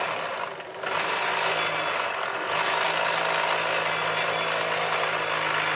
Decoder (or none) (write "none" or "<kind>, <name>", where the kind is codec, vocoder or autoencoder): none